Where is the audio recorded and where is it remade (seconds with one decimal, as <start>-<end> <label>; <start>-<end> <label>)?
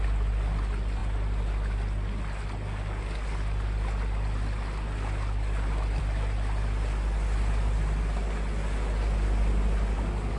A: 0.0-10.4 recorded